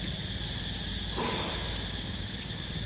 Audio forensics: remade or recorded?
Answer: recorded